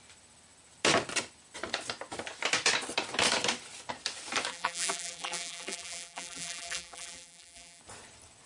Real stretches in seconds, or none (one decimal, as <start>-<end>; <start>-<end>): 0.0-4.5; 7.8-8.5